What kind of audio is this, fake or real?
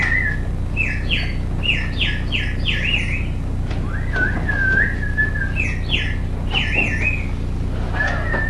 real